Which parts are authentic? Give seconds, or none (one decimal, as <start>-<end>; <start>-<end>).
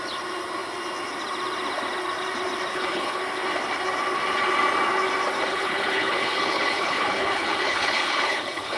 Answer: 0.0-2.7; 3.2-5.5